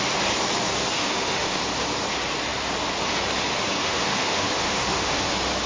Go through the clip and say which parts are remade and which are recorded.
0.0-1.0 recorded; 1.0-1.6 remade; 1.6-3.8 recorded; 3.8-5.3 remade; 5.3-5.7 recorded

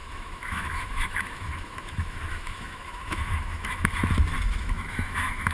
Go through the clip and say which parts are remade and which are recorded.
0.0-4.0 remade; 4.0-4.6 recorded; 4.6-5.5 remade

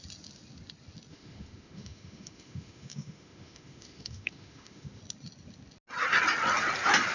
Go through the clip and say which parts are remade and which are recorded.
0.0-1.1 recorded; 1.1-5.0 remade; 5.0-7.1 recorded

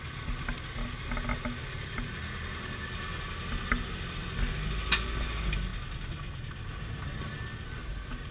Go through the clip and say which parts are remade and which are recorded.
0.0-8.3 recorded

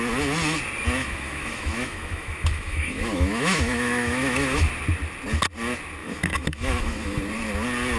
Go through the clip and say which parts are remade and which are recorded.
0.0-1.0 recorded; 1.0-4.7 remade; 4.7-6.0 recorded; 6.0-7.2 remade; 7.2-8.0 recorded

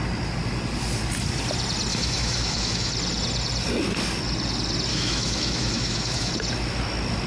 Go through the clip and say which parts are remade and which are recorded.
0.0-1.9 recorded; 1.9-2.9 remade; 2.9-4.9 recorded; 4.9-6.3 remade; 6.3-7.3 recorded

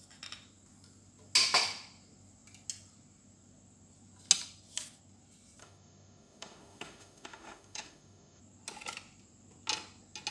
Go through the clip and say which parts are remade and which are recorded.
0.0-5.6 recorded; 5.6-8.4 remade; 8.4-10.3 recorded

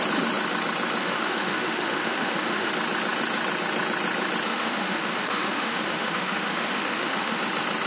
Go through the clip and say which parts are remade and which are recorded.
0.0-1.0 recorded; 1.0-2.7 remade; 2.7-4.5 recorded; 4.5-7.4 remade; 7.4-7.9 recorded